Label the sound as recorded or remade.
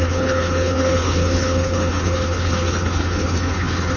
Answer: remade